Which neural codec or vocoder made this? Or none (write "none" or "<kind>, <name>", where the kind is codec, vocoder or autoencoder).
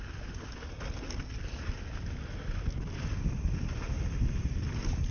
none